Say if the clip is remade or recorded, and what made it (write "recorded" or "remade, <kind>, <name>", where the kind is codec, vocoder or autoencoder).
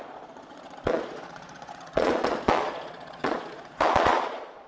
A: remade, vocoder, Vocos